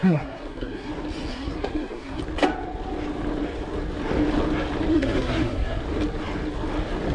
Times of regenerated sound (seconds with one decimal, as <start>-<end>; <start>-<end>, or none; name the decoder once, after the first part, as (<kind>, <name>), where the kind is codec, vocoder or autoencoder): 0.0-0.9 (codec, SNAC); 1.3-2.2; 4.9-5.8

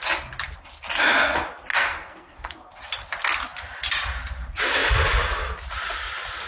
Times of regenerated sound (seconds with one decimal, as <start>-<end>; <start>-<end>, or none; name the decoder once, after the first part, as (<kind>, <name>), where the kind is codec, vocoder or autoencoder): 1.7-2.7 (codec, SNAC)

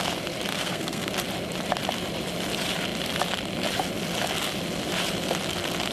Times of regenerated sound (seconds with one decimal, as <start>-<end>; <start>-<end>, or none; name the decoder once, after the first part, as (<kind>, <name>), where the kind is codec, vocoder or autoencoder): 0.5-1.1 (codec, SNAC)

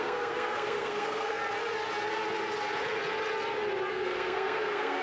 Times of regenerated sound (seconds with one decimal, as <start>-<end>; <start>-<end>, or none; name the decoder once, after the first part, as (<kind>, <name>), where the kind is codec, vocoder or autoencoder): 0.0-1.4 (codec, SNAC); 3.9-5.0

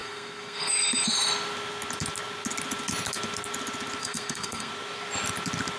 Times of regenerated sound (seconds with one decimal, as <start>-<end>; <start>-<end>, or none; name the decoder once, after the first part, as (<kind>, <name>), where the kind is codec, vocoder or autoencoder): 0.0-0.7 (codec, SNAC); 4.0-4.7